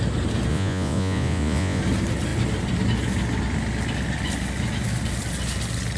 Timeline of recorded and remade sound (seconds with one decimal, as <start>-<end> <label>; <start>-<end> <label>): 0.0-0.5 recorded; 0.5-1.8 remade; 1.8-6.0 recorded